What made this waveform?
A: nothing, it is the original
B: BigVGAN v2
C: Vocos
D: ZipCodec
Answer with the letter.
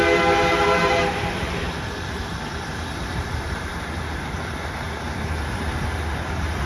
B